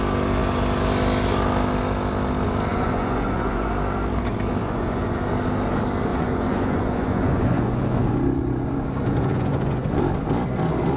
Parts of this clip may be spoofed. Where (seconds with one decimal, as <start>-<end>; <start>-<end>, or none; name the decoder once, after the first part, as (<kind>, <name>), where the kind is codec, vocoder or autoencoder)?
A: 2.7-3.7 (vocoder, Vocos); 4.6-5.2; 6.1-10.0